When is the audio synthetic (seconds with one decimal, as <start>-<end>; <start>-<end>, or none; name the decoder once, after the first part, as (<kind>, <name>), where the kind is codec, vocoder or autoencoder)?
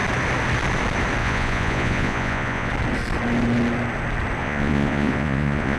1.2-2.7 (vocoder, Vocos); 4.4-5.8